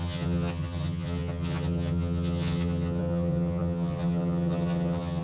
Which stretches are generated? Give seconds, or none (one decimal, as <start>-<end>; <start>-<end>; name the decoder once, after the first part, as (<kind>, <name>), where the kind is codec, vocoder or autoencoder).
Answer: 0.0-5.2 (vocoder, HiFi-GAN)